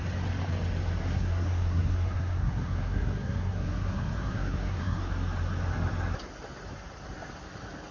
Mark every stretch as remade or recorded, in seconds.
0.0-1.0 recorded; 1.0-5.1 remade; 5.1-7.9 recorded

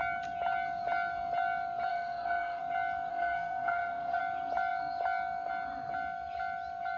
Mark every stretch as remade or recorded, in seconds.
0.0-1.9 recorded; 1.9-2.6 remade; 2.6-3.1 recorded; 3.1-4.2 remade; 4.2-7.0 recorded

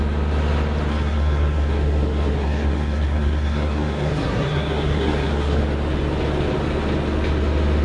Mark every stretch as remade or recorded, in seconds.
0.0-0.9 recorded; 0.9-5.6 remade; 5.6-7.8 recorded

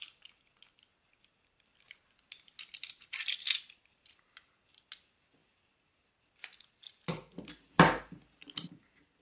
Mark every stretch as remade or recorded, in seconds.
0.0-9.2 recorded

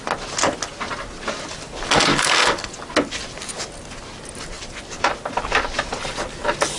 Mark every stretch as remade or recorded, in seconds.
0.0-2.1 recorded; 2.1-2.7 remade; 2.7-6.8 recorded

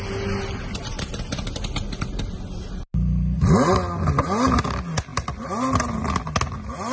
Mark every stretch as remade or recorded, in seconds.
0.0-6.9 recorded

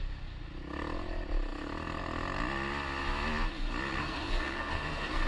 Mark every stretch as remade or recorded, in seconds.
0.0-3.9 recorded; 3.9-5.3 remade

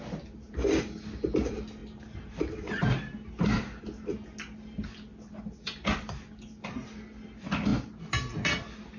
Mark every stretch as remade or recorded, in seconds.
0.0-9.0 recorded